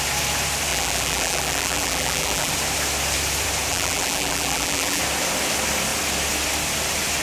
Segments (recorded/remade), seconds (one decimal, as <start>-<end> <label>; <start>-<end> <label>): 0.0-0.7 recorded; 0.7-2.5 remade; 2.5-3.7 recorded; 3.7-5.0 remade; 5.0-7.2 recorded